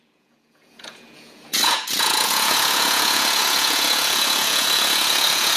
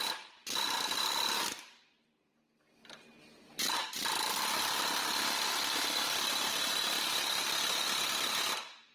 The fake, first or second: first